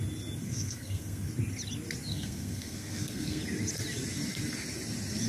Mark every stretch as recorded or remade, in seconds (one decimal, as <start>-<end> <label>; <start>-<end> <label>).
0.0-0.4 recorded; 0.4-1.3 remade; 1.3-2.1 recorded; 2.1-3.4 remade; 3.4-5.3 recorded